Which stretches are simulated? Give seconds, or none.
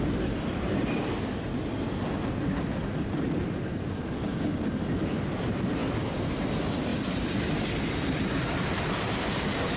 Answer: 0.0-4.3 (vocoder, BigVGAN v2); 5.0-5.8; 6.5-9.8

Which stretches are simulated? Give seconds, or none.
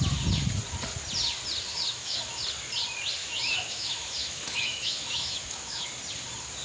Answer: 1.9-2.4 (autoencoder, DAC-VAE); 3.2-5.9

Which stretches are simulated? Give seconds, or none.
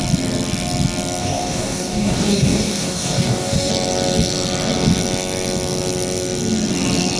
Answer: 1.2-3.7 (codec, DAC)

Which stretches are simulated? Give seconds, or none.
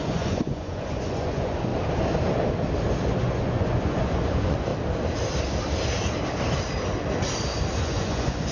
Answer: 0.0-1.7 (vocoder, Vocos); 3.2-4.7; 7.8-8.5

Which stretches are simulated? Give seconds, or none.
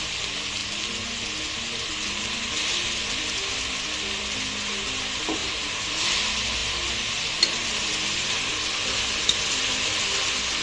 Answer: 5.4-6.0 (vocoder, BigVGAN v2)